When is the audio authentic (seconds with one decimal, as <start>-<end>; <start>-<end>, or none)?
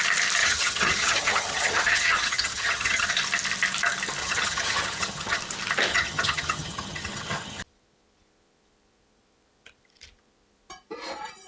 0.0-0.4; 3.1-4.2; 5.4-5.9; 7.6-11.5